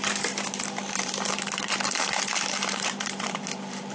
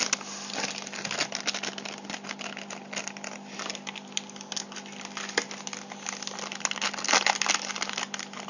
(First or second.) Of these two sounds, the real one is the second